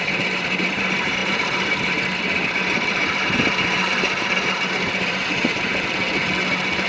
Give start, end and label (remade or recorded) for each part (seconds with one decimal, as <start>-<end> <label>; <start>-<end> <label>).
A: 0.0-5.7 remade; 5.7-6.5 recorded; 6.5-6.9 remade